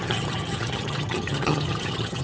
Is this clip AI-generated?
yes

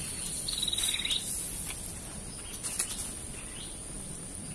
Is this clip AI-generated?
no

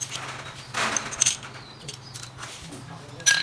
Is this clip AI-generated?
no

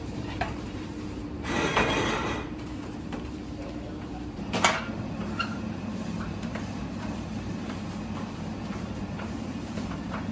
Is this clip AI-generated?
yes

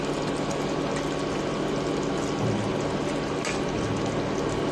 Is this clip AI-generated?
no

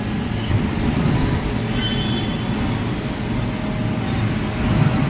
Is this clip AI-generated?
no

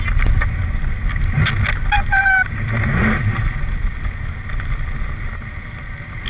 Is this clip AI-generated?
no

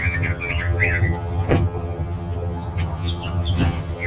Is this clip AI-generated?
yes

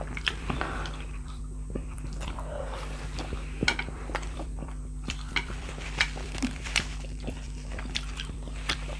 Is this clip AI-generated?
yes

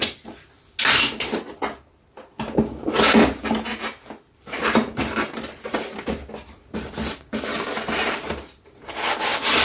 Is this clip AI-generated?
no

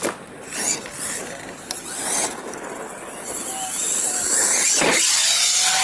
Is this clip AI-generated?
no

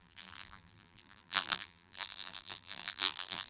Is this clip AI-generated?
yes